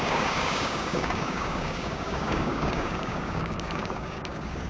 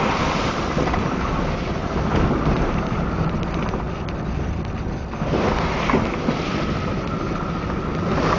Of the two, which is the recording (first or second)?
second